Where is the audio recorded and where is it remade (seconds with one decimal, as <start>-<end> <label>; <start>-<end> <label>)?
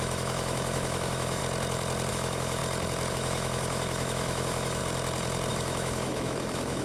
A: 0.0-1.4 remade; 1.4-2.1 recorded; 2.1-2.6 remade; 2.6-3.1 recorded; 3.1-4.8 remade; 4.8-5.5 recorded; 5.5-6.8 remade